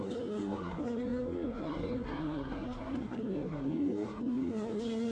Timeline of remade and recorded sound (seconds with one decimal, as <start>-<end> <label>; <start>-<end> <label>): 0.0-5.1 remade